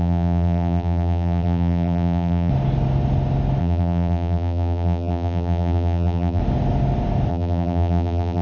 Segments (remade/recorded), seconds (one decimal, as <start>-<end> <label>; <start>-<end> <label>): 0.0-2.5 remade; 2.5-3.6 recorded; 3.6-6.4 remade; 6.4-7.3 recorded; 7.3-8.4 remade